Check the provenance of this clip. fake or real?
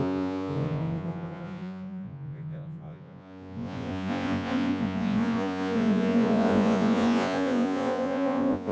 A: fake